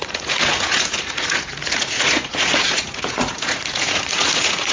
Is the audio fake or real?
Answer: fake